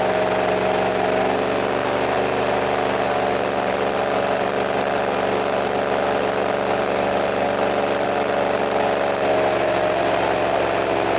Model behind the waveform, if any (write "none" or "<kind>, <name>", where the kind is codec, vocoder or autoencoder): none